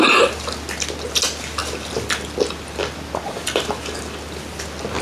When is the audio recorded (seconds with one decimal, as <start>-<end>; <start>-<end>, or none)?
0.0-5.0